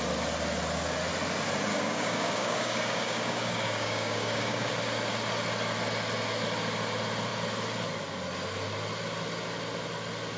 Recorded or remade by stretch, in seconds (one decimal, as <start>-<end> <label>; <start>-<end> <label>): 0.0-1.7 recorded; 1.7-4.7 remade; 4.7-10.4 recorded